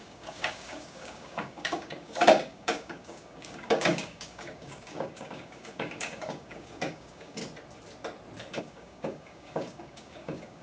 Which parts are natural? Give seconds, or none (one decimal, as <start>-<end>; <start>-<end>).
7.4-8.6